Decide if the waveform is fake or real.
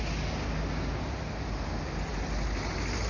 real